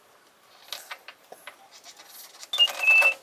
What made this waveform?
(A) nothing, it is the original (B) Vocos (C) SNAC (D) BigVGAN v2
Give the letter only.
A